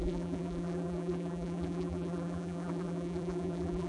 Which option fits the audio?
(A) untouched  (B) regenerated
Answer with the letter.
B